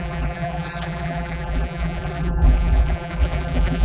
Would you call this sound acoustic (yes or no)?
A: no